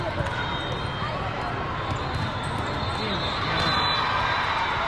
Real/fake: real